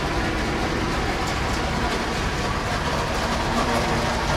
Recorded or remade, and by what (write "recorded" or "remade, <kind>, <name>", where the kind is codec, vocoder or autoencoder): recorded